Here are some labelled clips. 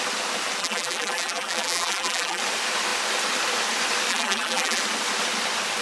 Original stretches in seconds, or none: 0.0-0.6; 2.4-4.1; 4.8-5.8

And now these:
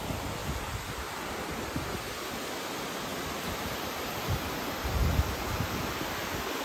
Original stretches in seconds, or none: 0.0-0.4; 1.3-6.6

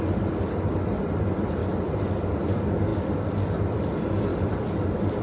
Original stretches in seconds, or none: 0.0-2.9; 3.9-4.3

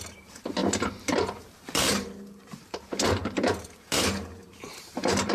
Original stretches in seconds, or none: none

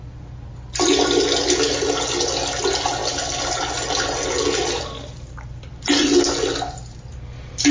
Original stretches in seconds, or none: 0.0-7.7